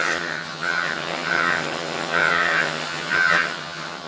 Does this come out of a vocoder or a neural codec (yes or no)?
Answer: yes